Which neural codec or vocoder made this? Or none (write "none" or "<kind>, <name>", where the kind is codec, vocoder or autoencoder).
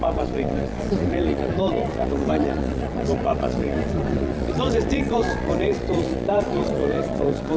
vocoder, Vocos